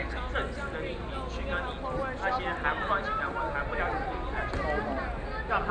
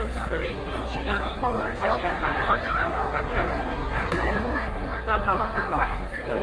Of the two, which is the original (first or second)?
first